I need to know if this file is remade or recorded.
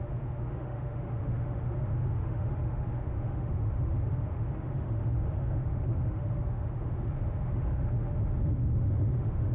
remade